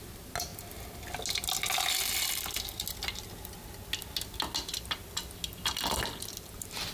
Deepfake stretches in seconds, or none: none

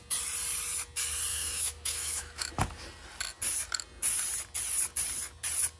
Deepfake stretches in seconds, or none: 1.3-2.5 (autoencoder, DAC-VAE)

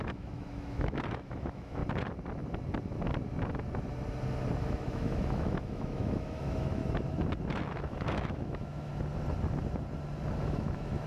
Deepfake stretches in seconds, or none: 0.0-1.8 (autoencoder, DAC-VAE); 4.6-6.8; 7.5-8.9; 10.4-11.1

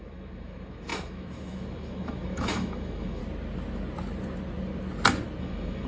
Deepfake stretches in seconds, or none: 0.0-3.2 (autoencoder, DAC-VAE); 5.4-5.9

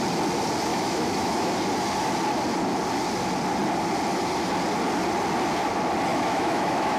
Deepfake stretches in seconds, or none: 0.7-1.5 (autoencoder, DAC-VAE); 6.1-7.0